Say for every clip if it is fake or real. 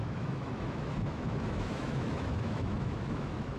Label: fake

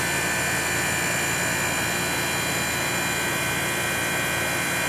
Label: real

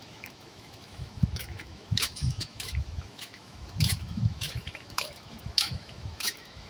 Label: fake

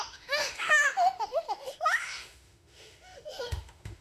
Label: fake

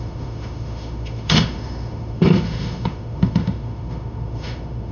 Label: fake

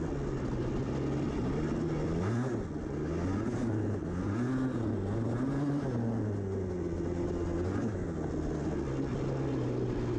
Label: real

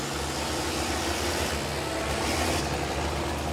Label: real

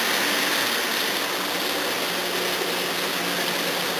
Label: real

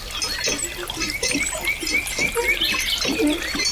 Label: real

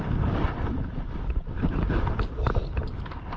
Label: real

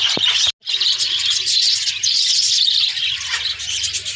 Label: real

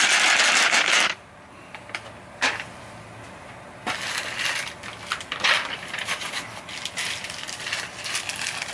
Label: real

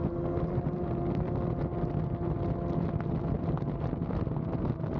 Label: real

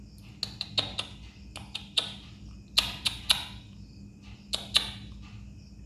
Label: real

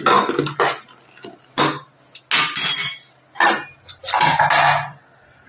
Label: real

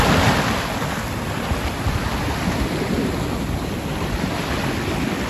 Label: real